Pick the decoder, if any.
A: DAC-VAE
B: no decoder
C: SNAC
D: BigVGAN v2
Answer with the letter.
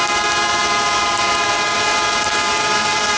B